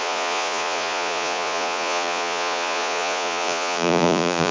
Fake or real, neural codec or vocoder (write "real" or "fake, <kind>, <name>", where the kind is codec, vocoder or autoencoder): fake, vocoder, Vocos